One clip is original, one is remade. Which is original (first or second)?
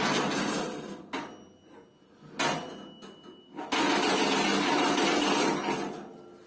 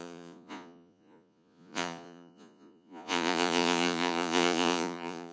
first